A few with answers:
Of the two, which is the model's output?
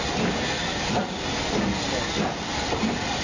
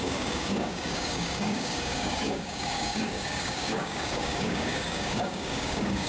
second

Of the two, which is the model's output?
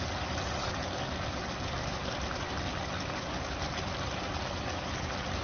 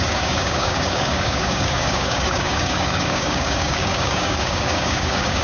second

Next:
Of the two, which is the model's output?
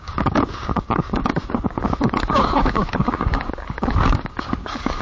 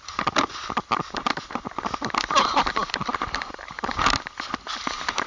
first